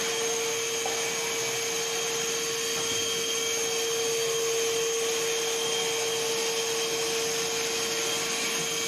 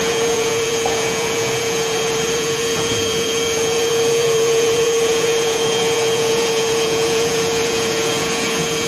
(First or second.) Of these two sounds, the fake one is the second